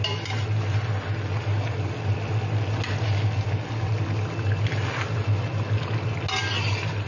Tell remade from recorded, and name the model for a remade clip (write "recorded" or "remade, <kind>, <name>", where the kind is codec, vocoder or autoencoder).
recorded